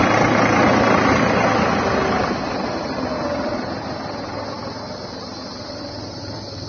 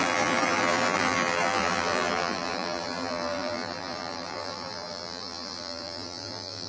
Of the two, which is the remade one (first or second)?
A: second